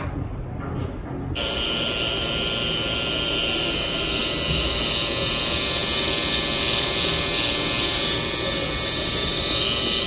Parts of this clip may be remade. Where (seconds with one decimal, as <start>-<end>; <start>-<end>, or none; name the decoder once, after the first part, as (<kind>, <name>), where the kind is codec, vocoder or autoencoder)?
none